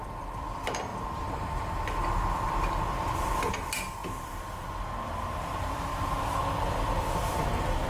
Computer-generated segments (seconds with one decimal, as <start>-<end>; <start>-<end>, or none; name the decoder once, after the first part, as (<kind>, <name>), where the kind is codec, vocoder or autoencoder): 0.0-0.9 (vocoder, BigVGAN v2); 3.5-7.9

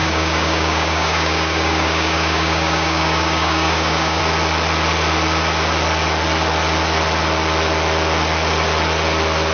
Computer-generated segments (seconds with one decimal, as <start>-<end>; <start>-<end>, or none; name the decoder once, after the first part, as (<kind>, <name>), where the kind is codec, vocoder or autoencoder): 0.0-4.2 (codec, DAC)